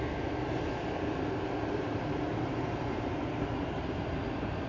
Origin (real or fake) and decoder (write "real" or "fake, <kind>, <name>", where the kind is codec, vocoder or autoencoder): real